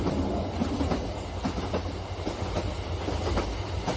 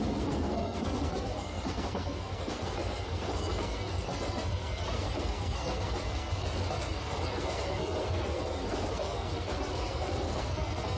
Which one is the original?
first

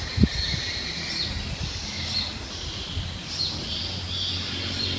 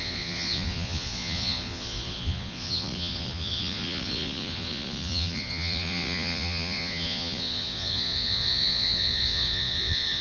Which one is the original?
first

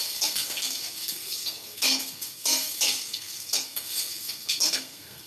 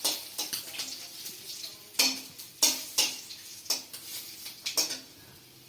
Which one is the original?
second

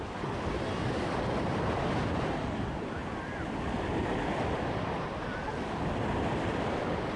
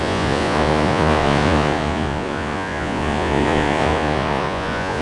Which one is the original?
first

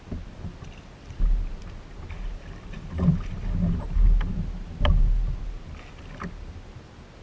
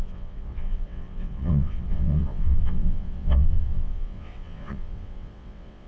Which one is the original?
first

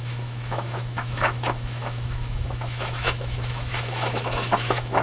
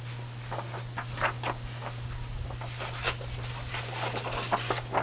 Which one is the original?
second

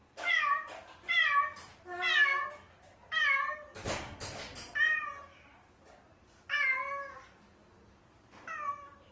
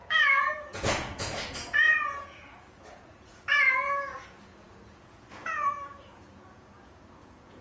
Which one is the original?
first